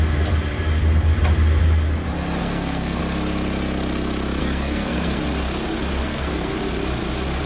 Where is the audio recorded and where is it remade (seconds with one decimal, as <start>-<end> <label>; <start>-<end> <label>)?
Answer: 0.0-2.4 recorded; 2.4-3.0 remade; 3.0-4.4 recorded; 4.4-5.2 remade; 5.2-6.0 recorded; 6.0-6.6 remade; 6.6-7.5 recorded